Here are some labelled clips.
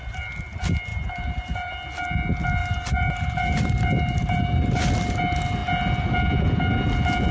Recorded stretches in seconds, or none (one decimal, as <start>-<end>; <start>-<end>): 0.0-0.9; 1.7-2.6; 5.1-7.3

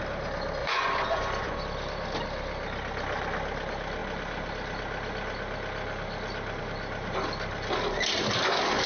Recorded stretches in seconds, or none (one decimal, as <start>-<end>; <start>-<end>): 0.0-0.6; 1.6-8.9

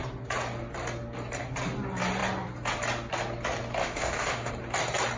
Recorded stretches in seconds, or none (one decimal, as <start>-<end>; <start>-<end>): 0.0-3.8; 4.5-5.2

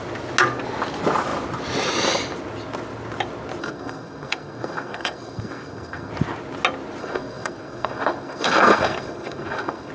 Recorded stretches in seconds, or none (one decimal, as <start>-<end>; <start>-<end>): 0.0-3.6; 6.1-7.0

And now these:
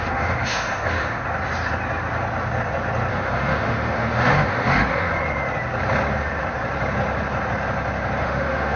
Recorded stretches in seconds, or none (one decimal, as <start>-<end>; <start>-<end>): 1.2-3.1; 5.1-8.2

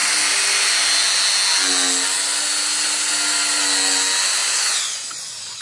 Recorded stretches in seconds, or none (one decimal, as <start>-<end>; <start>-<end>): 0.0-4.4